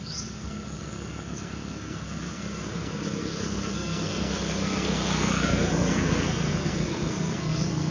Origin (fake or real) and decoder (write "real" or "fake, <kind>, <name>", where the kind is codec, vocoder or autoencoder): fake, codec, SNAC